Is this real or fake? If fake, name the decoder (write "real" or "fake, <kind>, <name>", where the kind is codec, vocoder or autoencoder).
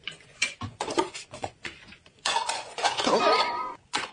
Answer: fake, vocoder, Vocos